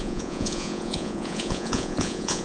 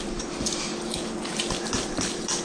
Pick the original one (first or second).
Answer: second